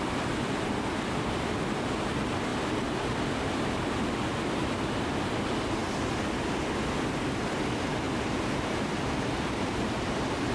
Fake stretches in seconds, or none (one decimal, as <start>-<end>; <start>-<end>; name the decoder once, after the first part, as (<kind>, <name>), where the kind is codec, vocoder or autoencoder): none